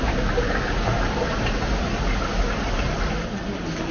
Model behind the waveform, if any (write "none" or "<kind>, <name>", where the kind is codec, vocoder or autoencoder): none